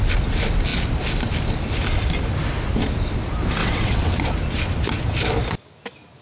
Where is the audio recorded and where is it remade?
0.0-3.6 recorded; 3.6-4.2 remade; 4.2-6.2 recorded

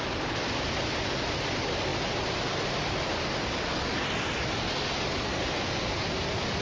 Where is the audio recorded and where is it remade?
0.0-6.6 recorded

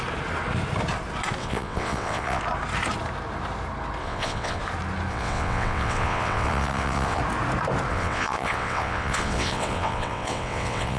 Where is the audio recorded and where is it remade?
0.0-1.4 recorded; 1.4-2.4 remade; 2.4-4.0 recorded; 4.0-4.6 remade; 4.6-5.1 recorded; 5.1-7.2 remade; 7.2-7.9 recorded; 7.9-11.0 remade

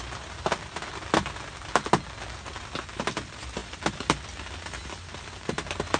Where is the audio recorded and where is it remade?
0.0-6.0 recorded